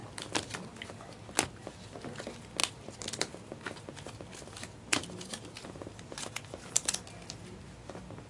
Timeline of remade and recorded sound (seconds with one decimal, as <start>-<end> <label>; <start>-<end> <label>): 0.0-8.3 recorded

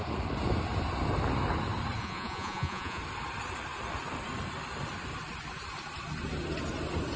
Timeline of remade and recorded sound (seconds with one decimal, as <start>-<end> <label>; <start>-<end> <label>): 0.0-2.0 recorded; 2.0-3.0 remade; 3.0-7.2 recorded

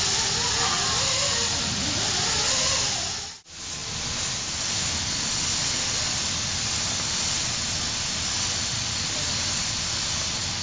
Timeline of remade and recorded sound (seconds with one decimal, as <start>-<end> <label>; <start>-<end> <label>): 0.0-10.6 recorded